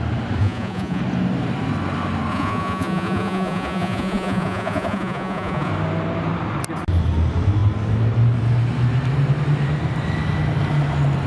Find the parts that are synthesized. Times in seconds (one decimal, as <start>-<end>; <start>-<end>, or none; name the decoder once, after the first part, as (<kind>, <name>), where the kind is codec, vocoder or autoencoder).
0.4-1.0 (vocoder, Vocos); 2.3-5.7